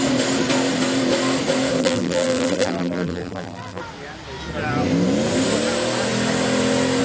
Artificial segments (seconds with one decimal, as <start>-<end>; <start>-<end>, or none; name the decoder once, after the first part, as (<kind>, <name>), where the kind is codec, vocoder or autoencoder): 1.8-3.8 (vocoder, BigVGAN v2)